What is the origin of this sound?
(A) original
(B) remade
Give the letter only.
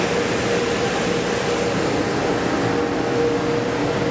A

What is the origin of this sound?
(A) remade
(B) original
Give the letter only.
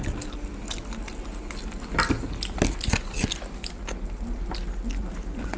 B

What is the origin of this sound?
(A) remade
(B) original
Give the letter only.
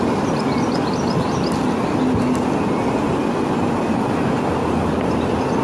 B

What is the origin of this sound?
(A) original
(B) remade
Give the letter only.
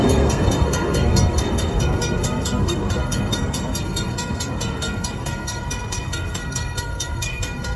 B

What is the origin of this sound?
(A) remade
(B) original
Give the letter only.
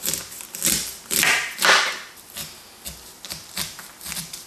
B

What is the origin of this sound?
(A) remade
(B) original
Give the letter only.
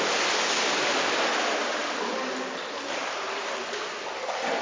B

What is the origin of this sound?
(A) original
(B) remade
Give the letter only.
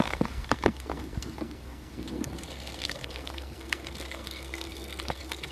B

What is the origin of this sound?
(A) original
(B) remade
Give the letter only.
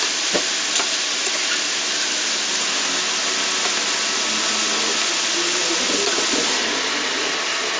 A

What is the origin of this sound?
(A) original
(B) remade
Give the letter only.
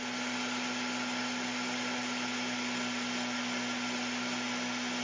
A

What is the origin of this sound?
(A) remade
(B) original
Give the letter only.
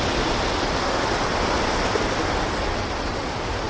B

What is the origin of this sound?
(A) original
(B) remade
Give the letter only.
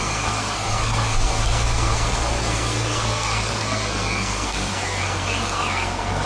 B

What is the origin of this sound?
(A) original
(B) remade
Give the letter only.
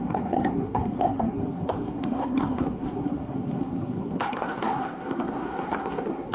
B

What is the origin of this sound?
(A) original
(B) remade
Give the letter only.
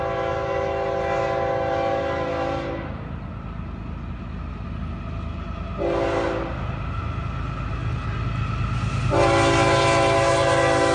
A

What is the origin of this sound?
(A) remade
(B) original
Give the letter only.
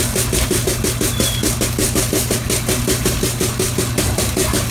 B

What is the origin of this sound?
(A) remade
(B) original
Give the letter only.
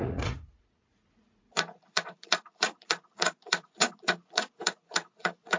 A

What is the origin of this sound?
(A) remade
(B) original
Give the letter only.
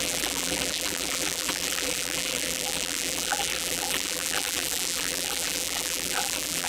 A